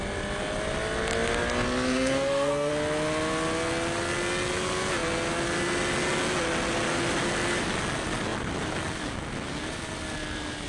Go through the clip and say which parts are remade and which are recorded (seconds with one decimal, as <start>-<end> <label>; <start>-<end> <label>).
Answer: 0.0-1.9 recorded; 1.9-2.7 remade; 2.7-10.7 recorded